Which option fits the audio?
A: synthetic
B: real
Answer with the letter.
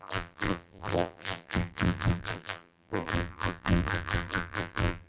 A